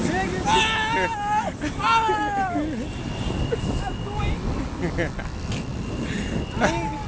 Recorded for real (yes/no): yes